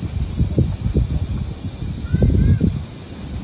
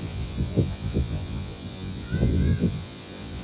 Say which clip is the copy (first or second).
second